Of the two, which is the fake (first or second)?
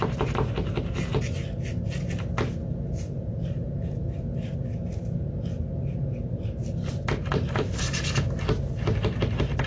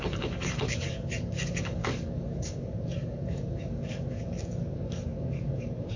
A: second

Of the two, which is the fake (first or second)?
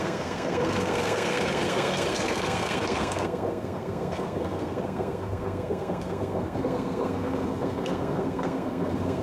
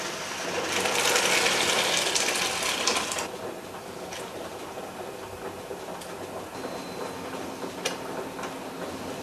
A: first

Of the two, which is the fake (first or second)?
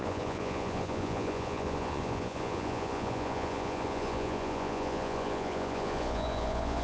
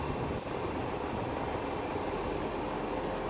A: first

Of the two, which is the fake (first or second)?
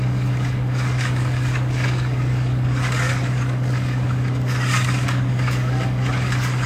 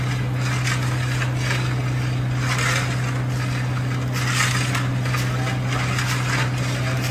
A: first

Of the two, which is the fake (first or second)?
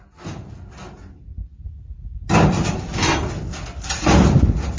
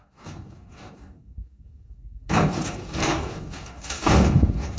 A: second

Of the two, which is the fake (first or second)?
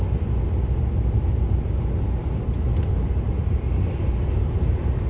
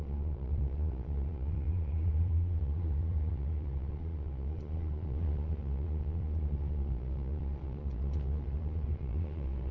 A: second